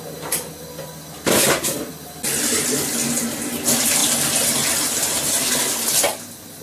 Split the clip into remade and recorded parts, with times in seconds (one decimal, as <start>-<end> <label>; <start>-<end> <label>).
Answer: 0.0-6.6 recorded